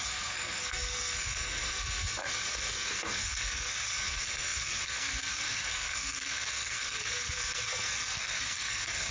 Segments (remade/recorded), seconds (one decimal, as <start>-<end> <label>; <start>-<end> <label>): 0.0-9.1 remade